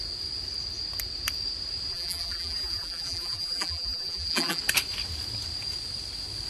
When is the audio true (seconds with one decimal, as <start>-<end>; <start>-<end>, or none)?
0.0-1.9; 4.6-6.5